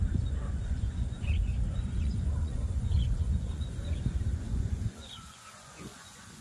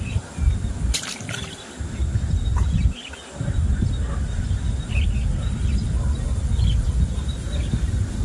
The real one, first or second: second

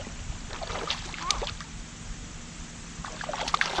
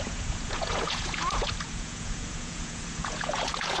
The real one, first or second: first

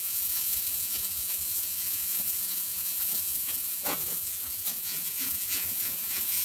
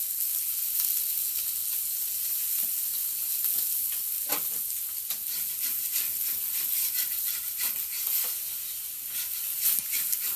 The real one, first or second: second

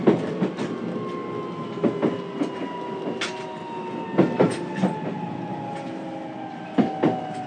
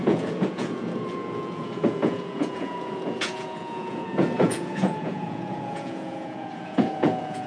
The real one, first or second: first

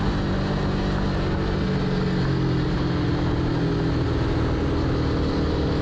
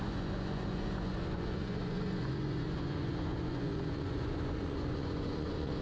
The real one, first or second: first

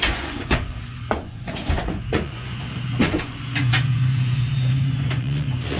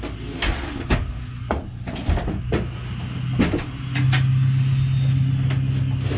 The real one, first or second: second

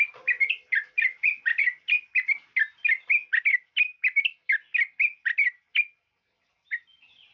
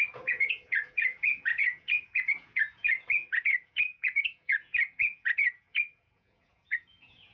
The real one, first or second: first